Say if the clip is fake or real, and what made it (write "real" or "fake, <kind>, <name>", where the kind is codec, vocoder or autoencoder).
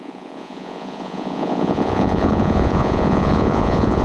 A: fake, vocoder, Vocos